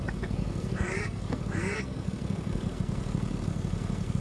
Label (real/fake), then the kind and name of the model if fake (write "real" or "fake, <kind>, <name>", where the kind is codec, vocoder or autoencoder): fake, codec, SNAC